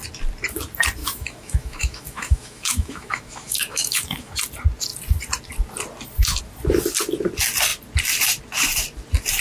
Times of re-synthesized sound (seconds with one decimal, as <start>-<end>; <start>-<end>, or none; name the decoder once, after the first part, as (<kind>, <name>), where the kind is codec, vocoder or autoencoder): 1.0-4.4 (autoencoder, DAC-VAE)